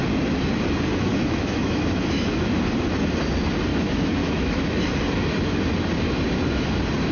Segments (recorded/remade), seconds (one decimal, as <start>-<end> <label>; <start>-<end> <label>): 0.0-1.1 recorded; 1.1-2.5 remade; 2.5-3.7 recorded; 3.7-4.9 remade; 4.9-7.1 recorded